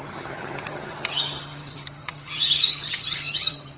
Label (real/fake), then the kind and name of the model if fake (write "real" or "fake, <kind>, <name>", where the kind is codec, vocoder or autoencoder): fake, vocoder, HiFi-GAN